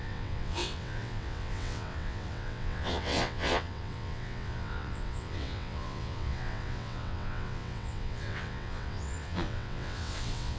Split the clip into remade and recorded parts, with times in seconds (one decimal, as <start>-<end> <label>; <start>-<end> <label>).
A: 0.0-10.6 remade